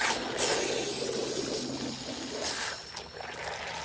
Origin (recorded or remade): recorded